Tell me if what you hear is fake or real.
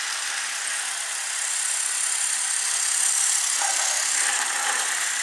real